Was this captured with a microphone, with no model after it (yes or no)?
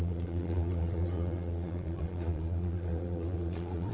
no